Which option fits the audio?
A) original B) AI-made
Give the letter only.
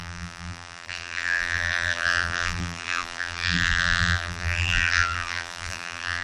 B